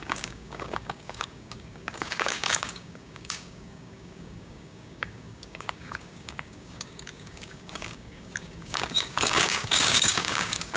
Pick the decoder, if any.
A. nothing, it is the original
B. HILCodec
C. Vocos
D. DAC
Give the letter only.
D